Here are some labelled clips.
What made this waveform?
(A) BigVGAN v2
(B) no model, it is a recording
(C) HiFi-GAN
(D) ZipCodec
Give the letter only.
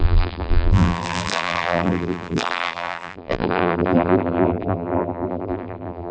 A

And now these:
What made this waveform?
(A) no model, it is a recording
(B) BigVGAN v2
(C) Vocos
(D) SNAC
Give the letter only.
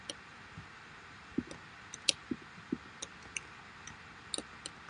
A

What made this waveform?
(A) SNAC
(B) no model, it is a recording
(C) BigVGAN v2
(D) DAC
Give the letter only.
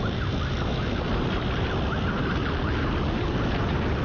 B